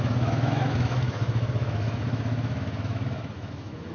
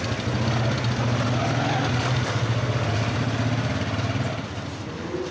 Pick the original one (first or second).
second